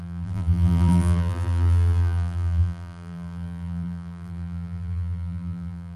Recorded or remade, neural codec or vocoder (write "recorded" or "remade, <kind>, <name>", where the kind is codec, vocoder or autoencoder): remade, vocoder, BigVGAN v2